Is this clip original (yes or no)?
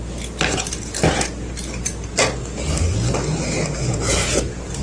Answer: yes